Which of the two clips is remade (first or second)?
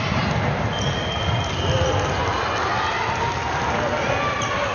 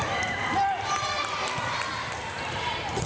second